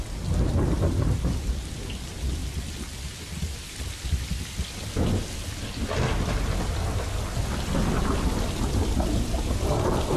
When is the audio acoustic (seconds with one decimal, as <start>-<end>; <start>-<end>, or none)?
0.0-10.2